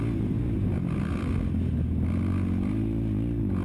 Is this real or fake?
real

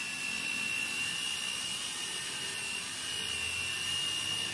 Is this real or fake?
real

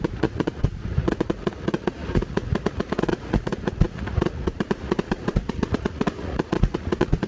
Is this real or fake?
fake